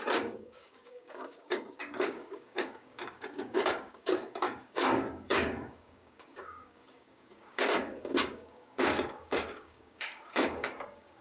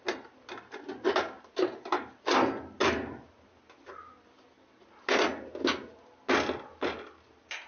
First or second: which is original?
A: second